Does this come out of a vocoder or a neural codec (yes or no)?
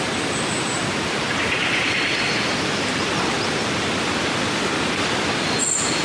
no